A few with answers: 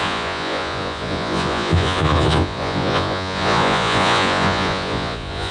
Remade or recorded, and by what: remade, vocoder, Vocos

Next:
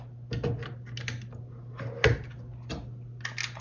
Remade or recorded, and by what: recorded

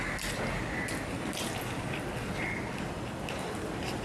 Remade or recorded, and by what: recorded